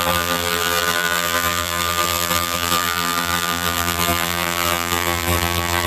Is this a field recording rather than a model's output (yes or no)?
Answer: no